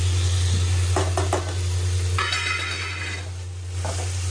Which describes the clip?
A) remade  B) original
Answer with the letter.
B